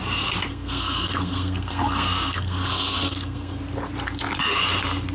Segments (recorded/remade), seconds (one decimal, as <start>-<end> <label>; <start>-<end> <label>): 0.0-0.5 recorded; 0.5-3.6 remade; 3.6-5.1 recorded